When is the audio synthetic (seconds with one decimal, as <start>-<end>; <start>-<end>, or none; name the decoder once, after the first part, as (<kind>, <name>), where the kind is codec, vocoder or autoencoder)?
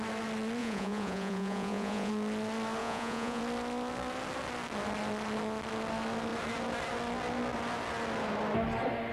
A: 0.6-2.1 (vocoder, Vocos); 2.8-3.4